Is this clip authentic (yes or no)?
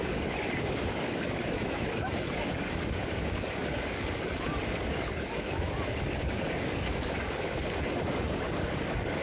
no